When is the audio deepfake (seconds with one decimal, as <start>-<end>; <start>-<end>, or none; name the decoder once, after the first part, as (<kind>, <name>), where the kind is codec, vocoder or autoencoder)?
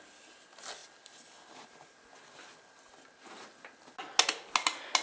none